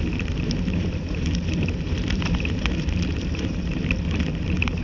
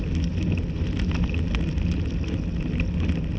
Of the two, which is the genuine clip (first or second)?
second